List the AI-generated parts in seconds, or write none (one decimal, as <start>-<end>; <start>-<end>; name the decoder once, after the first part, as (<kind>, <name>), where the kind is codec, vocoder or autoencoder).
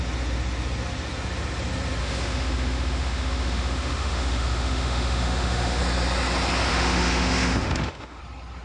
2.0-5.8 (autoencoder, DAC-VAE); 6.7-8.2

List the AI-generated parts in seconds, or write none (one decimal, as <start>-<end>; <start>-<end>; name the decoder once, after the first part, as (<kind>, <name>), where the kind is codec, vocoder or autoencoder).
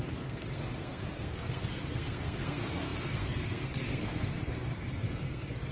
0.0-5.7 (codec, SNAC)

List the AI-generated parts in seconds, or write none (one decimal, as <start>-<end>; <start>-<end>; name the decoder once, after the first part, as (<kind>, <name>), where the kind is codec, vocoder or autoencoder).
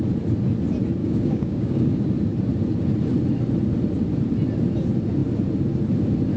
1.0-1.9 (codec, DAC)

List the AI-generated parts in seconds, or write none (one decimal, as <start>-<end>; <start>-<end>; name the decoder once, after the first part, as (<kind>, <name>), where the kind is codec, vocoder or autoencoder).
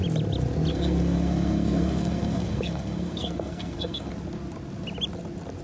0.7-4.1 (codec, SNAC)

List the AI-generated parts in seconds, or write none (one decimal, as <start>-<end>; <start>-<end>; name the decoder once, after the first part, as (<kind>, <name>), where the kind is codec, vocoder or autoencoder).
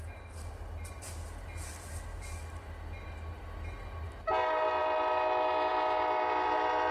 none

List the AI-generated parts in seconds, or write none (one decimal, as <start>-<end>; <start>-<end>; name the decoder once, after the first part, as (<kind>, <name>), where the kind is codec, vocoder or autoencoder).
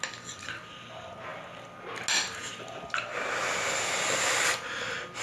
none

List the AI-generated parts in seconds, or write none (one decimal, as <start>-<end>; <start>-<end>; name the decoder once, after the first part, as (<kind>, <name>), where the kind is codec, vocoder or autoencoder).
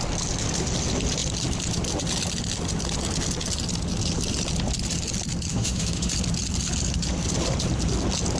5.5-6.1 (autoencoder, DAC-VAE)